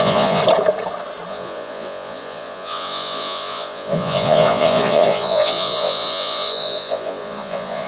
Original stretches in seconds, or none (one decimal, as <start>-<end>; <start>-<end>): 0.4-1.3

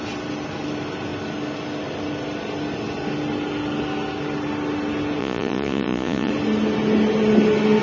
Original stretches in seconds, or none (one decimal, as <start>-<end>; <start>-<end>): 0.0-5.2; 6.3-7.8

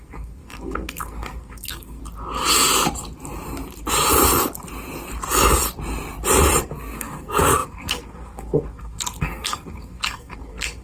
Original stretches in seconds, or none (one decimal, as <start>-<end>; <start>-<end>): 2.0-6.6

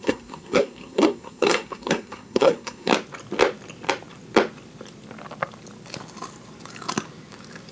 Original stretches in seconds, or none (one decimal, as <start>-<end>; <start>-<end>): 2.9-7.7

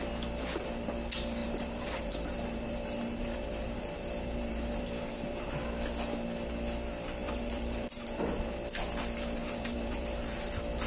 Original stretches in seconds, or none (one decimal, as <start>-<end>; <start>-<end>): 0.0-1.4; 5.5-7.2; 8.4-9.4; 10.5-10.9

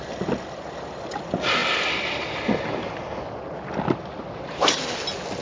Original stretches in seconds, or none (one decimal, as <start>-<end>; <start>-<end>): 0.0-5.4

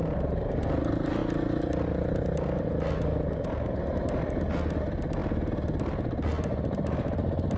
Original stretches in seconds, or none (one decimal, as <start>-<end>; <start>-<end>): 0.0-7.6

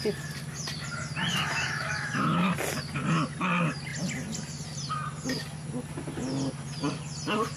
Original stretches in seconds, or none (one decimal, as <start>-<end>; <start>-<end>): 0.0-1.3; 2.5-7.6